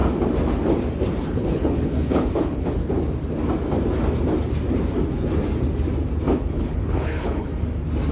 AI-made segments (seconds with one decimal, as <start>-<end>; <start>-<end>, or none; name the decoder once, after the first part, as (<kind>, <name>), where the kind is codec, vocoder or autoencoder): 1.2-2.8 (codec, HILCodec); 6.4-7.5